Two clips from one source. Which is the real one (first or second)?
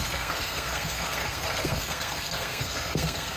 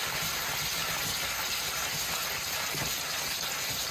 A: second